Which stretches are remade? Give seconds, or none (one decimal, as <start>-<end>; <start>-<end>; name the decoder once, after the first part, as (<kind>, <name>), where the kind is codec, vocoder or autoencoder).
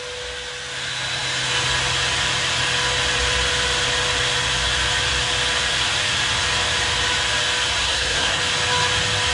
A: 7.8-8.4 (codec, SNAC)